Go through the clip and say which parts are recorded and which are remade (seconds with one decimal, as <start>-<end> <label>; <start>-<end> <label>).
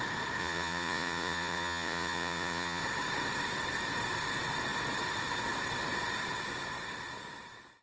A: 0.0-0.4 recorded; 0.4-2.8 remade; 2.8-7.8 recorded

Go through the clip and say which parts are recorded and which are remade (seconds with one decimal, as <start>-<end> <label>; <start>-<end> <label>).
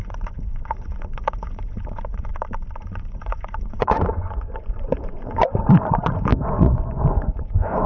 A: 0.0-2.3 remade; 2.3-2.8 recorded; 2.8-7.9 remade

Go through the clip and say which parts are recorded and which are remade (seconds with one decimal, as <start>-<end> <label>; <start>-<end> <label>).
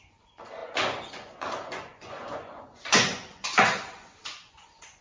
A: 0.0-5.0 remade